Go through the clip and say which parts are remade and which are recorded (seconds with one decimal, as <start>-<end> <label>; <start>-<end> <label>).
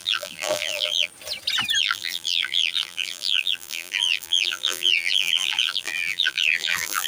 0.0-1.1 remade; 1.1-1.8 recorded; 1.8-7.1 remade